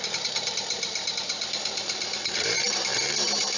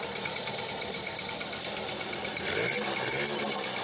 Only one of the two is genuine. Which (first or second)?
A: second